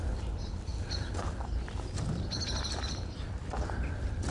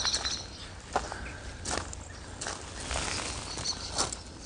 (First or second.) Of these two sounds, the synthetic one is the first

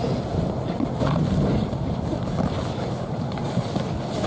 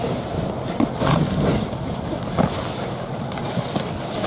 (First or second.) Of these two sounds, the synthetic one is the first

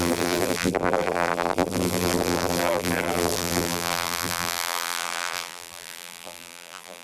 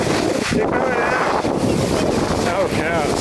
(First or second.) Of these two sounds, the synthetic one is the first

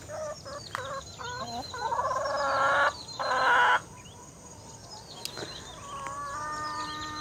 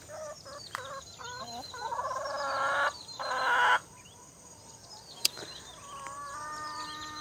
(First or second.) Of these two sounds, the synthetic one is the second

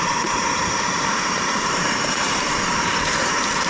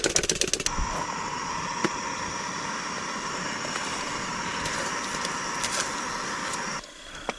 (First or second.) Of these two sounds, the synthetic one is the first